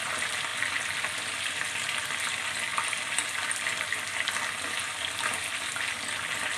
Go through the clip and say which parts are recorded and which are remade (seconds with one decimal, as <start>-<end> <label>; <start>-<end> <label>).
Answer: 0.0-6.6 recorded